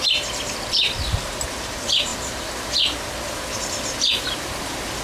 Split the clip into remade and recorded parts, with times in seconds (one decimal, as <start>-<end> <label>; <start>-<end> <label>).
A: 0.0-5.0 recorded